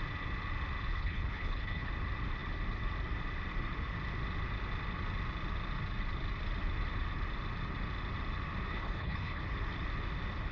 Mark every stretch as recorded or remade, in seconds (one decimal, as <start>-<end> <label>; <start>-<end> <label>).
0.0-0.9 recorded; 0.9-1.9 remade; 1.9-8.7 recorded; 8.7-9.4 remade; 9.4-10.5 recorded